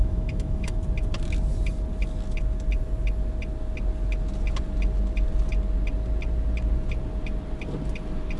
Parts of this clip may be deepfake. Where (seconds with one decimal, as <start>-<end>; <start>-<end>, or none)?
0.0-0.8